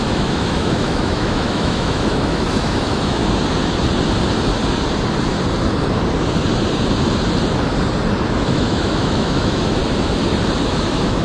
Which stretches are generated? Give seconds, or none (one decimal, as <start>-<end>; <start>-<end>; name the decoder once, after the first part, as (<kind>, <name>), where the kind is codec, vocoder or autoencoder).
0.0-3.2 (autoencoder, DAC-VAE); 8.4-9.8; 10.6-11.2